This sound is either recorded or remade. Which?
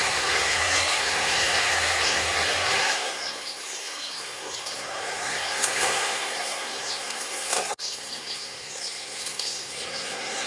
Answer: remade